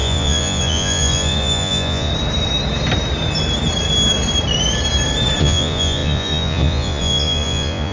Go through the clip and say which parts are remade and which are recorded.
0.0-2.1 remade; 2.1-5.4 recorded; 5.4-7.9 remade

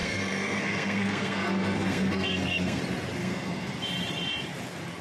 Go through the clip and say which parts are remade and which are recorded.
0.0-2.8 remade; 2.8-3.2 recorded; 3.2-3.7 remade; 3.7-5.0 recorded

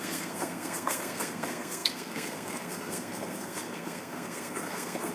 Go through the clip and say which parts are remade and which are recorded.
0.0-5.1 remade